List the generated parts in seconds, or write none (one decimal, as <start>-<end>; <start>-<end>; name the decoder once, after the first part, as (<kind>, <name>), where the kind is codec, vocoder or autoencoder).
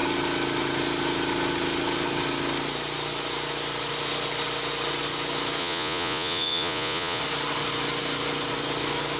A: 5.6-7.2 (vocoder, Vocos)